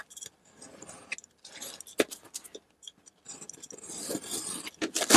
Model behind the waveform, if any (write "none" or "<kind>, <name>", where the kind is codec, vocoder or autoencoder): none